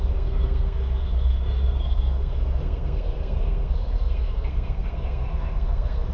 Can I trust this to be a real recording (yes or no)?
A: no